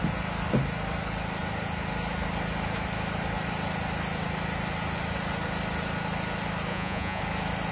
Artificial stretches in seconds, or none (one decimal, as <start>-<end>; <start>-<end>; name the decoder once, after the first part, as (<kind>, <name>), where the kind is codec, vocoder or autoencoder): 6.7-7.2 (vocoder, Vocos)